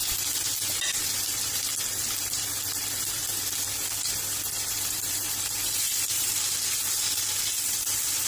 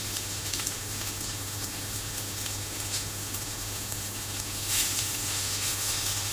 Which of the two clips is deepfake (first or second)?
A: second